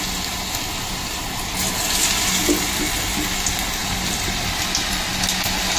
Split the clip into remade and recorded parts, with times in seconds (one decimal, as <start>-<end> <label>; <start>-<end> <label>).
0.0-5.8 recorded